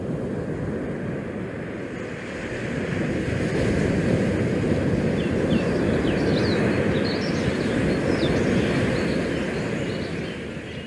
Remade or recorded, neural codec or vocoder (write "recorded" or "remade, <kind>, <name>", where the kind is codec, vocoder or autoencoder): recorded